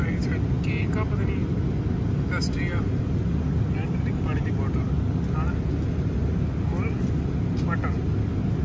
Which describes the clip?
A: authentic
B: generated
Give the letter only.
A